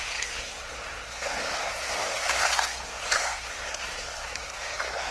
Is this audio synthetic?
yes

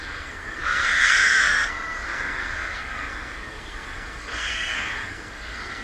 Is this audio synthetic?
yes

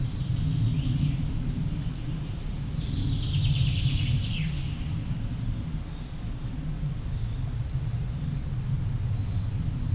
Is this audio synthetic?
no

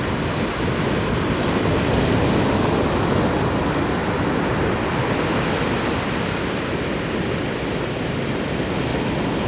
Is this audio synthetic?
no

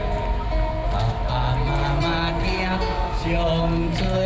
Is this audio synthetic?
no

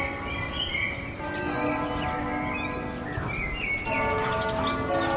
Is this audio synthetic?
no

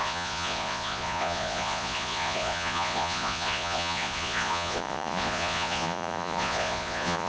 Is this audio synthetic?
yes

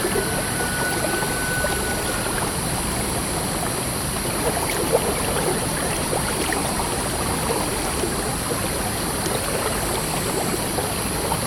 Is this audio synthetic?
no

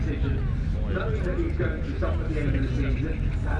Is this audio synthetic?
no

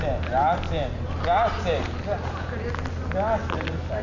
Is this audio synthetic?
no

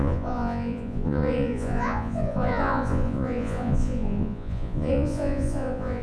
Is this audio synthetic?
yes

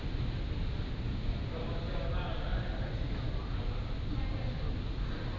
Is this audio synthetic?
no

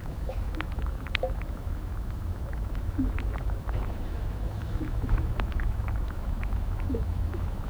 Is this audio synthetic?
yes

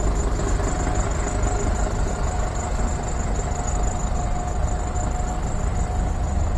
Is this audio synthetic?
no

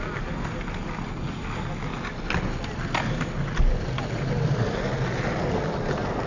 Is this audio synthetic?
no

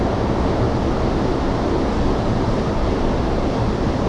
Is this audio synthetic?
no